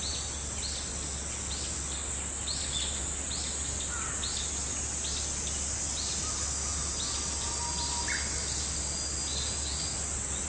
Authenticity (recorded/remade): recorded